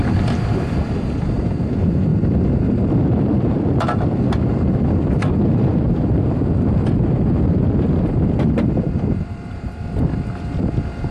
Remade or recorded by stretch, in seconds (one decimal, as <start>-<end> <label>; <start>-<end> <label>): 0.0-2.1 remade; 2.1-3.0 recorded; 3.0-11.1 remade